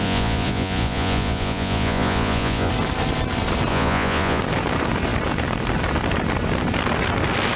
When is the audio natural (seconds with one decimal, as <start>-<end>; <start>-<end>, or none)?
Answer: 2.7-3.7; 4.4-7.6